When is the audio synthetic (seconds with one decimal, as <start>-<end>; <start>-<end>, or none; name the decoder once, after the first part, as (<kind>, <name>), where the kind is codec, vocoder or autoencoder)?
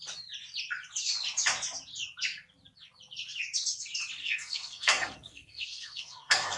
4.2-6.6 (codec, SNAC)